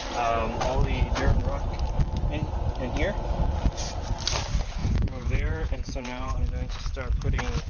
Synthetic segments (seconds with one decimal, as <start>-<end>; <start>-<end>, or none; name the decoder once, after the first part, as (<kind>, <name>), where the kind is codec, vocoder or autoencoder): 4.8-6.4 (vocoder, Vocos)